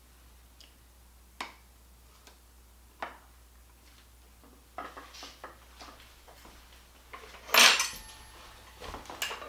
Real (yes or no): yes